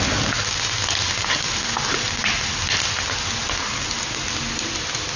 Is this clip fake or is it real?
real